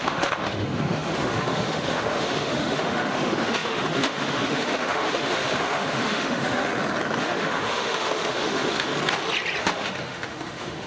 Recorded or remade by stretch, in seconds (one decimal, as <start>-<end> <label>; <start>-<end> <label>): 0.0-6.7 remade; 6.7-7.2 recorded; 7.2-8.9 remade; 8.9-9.6 recorded; 9.6-10.9 remade